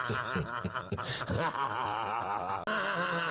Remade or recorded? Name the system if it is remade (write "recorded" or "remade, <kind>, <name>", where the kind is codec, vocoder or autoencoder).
recorded